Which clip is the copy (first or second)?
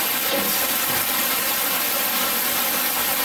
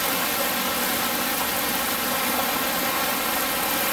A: first